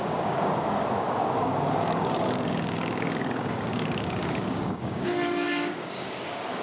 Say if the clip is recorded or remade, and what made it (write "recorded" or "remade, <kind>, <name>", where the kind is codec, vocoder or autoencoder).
remade, codec, DAC